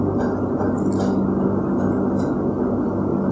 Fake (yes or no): no